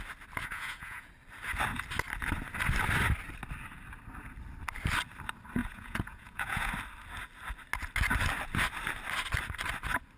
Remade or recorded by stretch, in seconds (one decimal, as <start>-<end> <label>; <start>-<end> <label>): 0.0-0.4 recorded; 0.4-1.1 remade; 1.1-5.6 recorded; 5.6-6.7 remade; 6.7-10.2 recorded